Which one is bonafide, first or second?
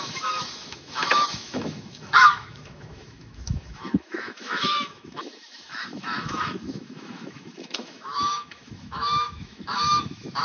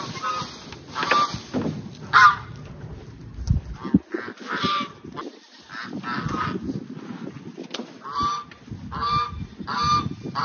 second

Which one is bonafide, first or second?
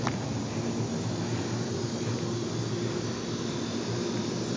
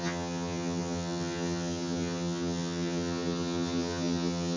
first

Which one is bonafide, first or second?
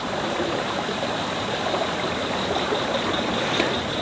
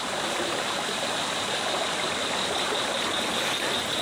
second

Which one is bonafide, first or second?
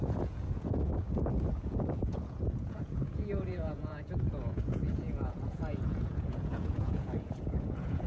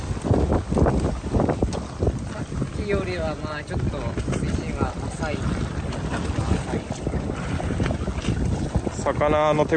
second